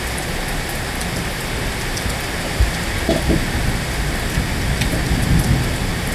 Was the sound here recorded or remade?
recorded